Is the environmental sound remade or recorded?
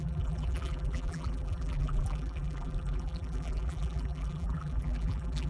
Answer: remade